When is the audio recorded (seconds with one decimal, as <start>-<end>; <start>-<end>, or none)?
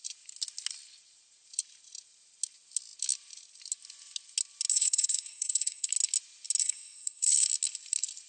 0.0-4.7; 5.9-6.6; 7.5-8.3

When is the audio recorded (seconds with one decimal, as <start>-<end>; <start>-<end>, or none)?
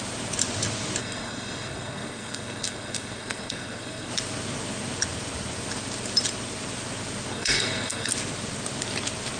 0.0-1.0; 4.1-7.3; 8.1-9.4